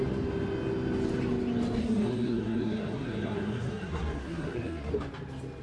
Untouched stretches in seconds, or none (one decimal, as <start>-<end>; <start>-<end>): 0.0-1.8; 4.9-5.6